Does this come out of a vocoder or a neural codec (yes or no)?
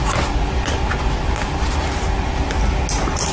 no